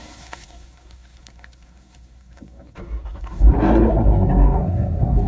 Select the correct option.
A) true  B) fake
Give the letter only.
B